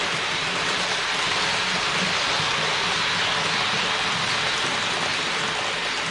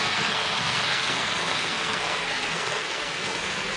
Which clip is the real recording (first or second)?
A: first